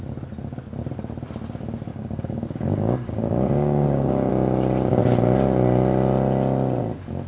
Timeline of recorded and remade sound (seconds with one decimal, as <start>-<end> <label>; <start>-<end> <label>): 0.0-1.9 recorded; 1.9-4.3 remade; 4.3-7.3 recorded

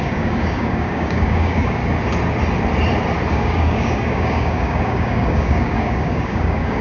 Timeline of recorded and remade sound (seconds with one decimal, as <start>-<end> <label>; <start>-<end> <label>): 0.0-1.8 remade; 1.8-3.3 recorded; 3.3-6.8 remade

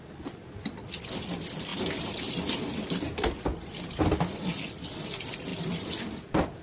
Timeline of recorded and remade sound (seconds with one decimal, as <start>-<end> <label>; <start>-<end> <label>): 0.0-6.6 recorded

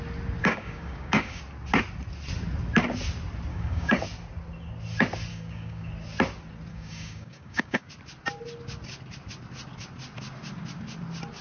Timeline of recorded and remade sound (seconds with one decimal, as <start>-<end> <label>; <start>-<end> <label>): 0.0-0.4 recorded; 0.4-1.4 remade; 1.4-3.5 recorded; 3.5-4.0 remade; 4.0-5.3 recorded; 5.3-5.9 remade; 5.9-6.7 recorded; 6.7-7.9 remade; 7.9-11.4 recorded

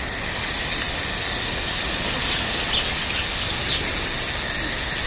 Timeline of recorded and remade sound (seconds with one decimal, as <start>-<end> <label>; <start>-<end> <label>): 0.0-5.1 recorded

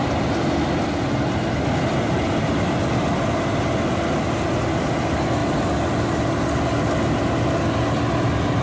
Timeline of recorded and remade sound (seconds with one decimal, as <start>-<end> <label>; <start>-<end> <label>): 0.0-8.6 recorded